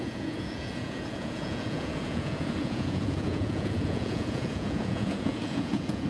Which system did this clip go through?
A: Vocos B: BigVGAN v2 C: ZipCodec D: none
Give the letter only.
A